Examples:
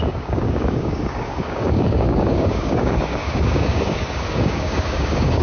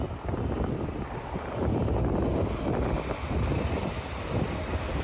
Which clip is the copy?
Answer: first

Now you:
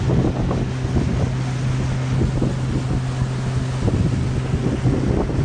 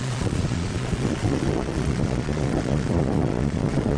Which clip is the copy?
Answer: second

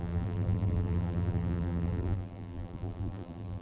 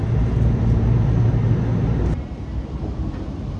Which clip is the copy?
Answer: first